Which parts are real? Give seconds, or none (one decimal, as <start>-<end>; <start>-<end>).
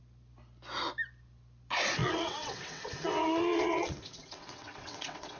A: 0.0-2.0